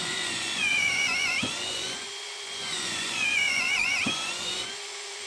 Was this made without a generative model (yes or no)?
no